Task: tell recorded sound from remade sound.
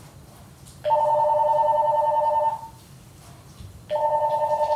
recorded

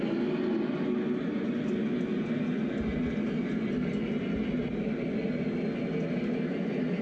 recorded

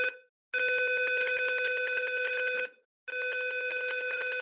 recorded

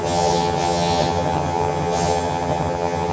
remade